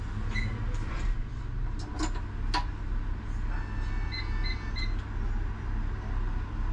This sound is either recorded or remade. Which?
recorded